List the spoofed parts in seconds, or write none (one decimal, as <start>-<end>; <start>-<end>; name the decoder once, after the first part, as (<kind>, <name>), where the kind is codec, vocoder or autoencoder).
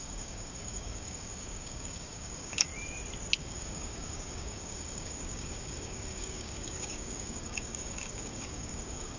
0.0-2.7 (codec, DAC); 3.4-9.2